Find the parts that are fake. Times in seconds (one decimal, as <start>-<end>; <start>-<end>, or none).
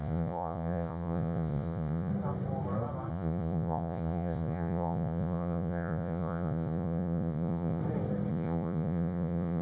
0.0-2.1; 3.1-7.8; 8.3-9.6